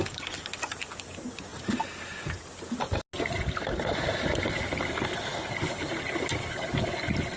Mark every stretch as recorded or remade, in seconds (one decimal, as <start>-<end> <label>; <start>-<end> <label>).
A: 0.0-7.4 recorded